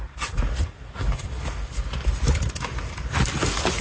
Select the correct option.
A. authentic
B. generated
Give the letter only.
A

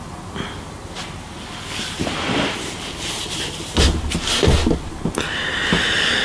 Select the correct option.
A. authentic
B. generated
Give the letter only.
A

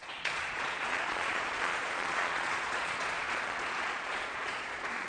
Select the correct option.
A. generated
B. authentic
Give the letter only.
A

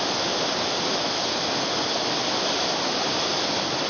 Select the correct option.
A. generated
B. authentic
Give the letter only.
B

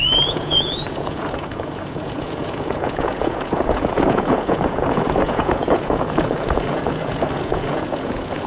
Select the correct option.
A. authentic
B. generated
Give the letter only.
B